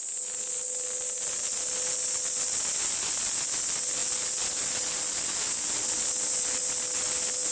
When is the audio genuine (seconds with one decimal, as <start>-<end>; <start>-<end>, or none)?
0.0-7.5